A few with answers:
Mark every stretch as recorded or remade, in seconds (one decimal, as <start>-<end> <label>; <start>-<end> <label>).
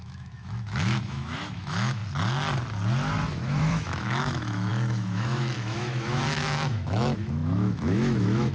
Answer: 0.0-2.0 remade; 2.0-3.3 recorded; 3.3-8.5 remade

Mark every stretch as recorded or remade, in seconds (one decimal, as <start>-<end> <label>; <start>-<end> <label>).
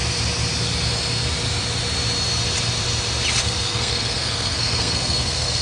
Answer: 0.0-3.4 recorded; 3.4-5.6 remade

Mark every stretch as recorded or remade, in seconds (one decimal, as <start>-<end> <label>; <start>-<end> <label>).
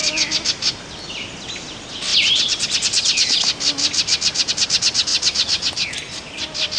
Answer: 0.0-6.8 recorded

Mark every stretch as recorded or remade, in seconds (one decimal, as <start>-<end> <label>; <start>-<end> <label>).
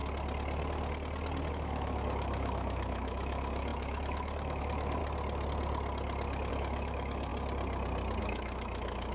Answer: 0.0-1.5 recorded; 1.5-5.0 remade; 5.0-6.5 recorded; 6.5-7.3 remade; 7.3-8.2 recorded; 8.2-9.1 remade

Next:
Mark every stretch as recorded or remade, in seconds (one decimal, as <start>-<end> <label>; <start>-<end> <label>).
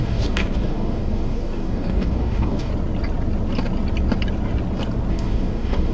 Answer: 0.0-2.7 remade; 2.7-5.1 recorded; 5.1-5.9 remade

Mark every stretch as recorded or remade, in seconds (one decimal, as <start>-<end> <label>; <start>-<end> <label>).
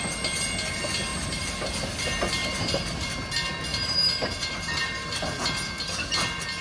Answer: 0.0-1.1 recorded; 1.1-1.9 remade; 1.9-2.4 recorded; 2.4-3.1 remade; 3.1-3.7 recorded; 3.7-5.2 remade; 5.2-6.6 recorded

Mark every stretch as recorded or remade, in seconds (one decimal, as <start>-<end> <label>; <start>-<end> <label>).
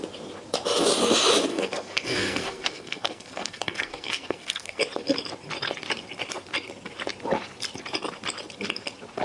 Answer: 0.0-1.5 recorded; 1.5-4.8 remade; 4.8-9.2 recorded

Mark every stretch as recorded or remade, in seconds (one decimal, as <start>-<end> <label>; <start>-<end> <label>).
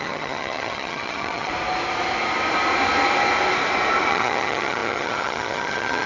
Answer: 0.0-1.5 remade; 1.5-4.1 recorded; 4.1-6.1 remade